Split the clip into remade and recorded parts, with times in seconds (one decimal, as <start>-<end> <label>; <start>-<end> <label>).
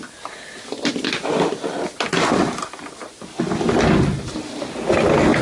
0.0-5.4 recorded